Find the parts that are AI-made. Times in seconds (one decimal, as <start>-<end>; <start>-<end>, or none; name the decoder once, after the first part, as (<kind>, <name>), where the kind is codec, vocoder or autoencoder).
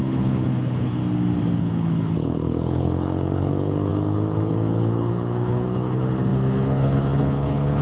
0.0-1.0 (codec, HILCodec); 1.6-7.8